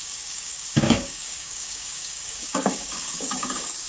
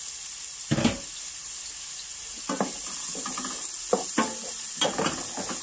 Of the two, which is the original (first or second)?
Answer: second